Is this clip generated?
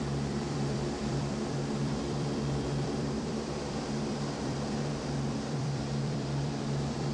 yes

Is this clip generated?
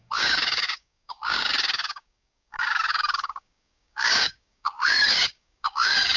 yes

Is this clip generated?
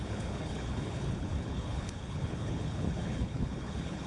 yes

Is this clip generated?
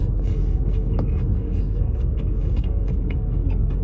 yes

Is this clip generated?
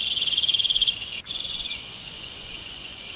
yes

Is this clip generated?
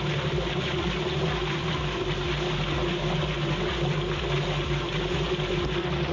no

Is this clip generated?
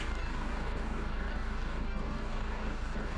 yes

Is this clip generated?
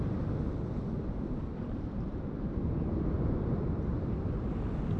no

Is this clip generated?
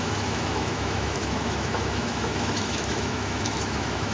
yes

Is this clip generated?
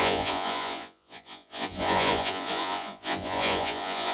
yes